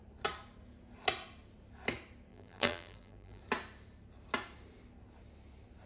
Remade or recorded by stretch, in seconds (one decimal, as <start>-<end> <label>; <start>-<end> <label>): 0.0-2.3 recorded; 2.3-3.4 remade; 3.4-5.9 recorded